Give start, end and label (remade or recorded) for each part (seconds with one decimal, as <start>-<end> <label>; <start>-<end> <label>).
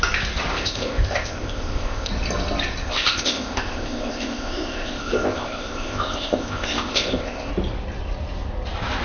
0.0-0.5 recorded; 0.5-2.1 remade; 2.1-2.8 recorded; 2.8-7.5 remade; 7.5-9.0 recorded